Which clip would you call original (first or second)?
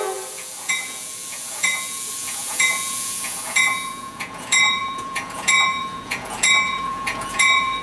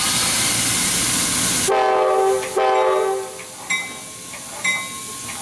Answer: second